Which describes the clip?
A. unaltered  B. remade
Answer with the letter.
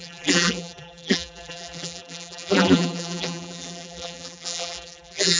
B